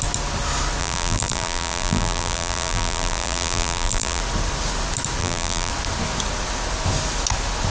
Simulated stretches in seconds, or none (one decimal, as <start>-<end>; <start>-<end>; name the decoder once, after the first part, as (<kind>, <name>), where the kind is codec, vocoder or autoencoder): 0.8-4.2 (vocoder, BigVGAN v2); 5.2-5.7